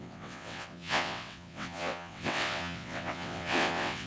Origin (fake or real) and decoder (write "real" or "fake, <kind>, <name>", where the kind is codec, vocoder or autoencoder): fake, vocoder, WaveNeXt